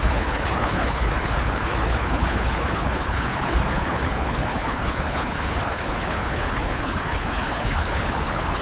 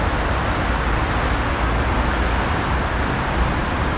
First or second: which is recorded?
second